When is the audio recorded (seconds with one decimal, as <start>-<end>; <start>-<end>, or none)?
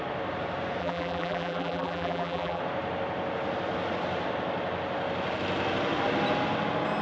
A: 0.0-0.8; 2.6-7.0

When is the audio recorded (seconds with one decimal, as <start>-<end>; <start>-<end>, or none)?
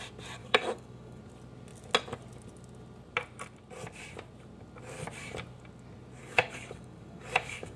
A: 0.0-0.4; 1.2-6.2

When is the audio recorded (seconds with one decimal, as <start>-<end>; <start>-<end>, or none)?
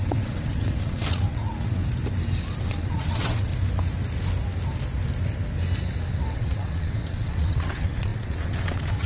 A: 1.8-2.6; 3.5-6.1